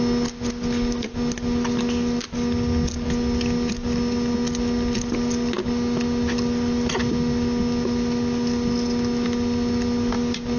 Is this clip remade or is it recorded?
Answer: recorded